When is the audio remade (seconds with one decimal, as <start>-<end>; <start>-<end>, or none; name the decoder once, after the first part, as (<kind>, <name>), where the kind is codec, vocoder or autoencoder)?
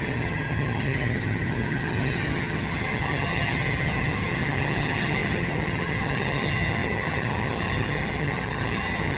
0.0-9.2 (vocoder, HiFi-GAN)